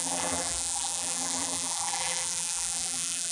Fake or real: fake